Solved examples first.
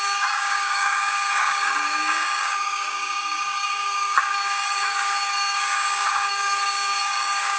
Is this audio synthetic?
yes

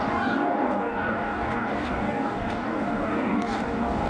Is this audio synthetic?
yes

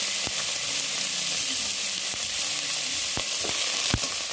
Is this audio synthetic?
no